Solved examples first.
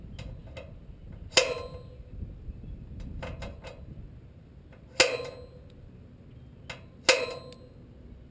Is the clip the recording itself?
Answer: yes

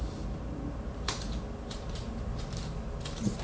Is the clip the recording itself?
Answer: yes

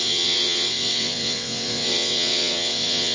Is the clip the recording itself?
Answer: no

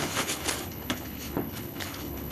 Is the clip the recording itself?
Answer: no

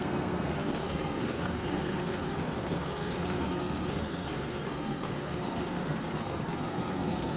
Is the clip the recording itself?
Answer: no